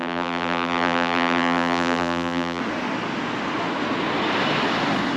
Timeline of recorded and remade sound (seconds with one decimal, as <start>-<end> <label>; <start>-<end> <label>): 0.0-2.6 remade; 2.6-5.2 recorded